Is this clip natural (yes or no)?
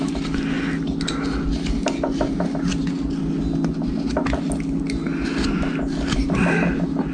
yes